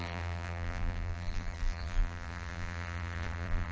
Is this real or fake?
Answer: fake